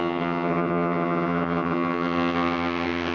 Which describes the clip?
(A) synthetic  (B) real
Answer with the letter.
A